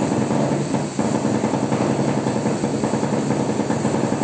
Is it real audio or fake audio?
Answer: real